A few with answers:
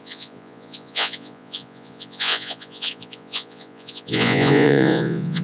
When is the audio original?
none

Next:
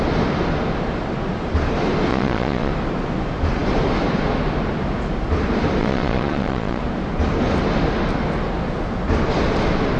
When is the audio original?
0.0-2.1; 2.7-5.8; 6.8-10.0

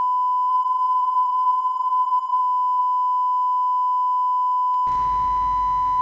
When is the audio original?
0.0-0.5; 2.4-6.0

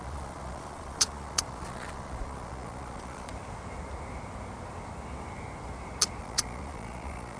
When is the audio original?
3.3-6.2

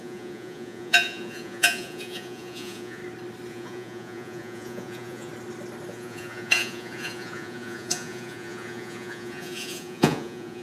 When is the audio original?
3.0-3.5; 5.3-5.9

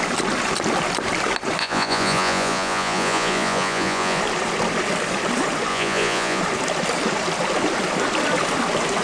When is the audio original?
0.0-1.6; 4.2-5.7; 6.4-9.0

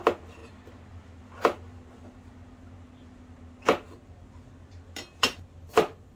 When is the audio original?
0.0-6.2

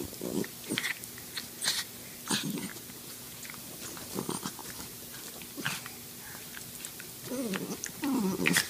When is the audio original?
0.0-2.7; 3.5-8.7